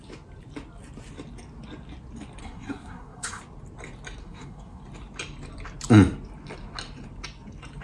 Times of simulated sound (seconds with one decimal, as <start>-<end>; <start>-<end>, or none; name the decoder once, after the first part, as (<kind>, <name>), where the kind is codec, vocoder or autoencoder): 2.4-3.4 (codec, SNAC); 4.2-4.8